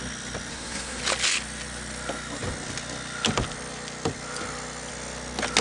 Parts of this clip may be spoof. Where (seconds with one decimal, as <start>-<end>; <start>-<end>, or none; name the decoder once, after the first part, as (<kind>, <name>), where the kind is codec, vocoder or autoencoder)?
0.5-1.0 (codec, SNAC)